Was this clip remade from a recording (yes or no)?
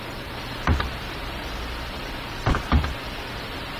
yes